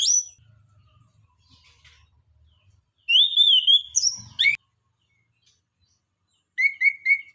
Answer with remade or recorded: recorded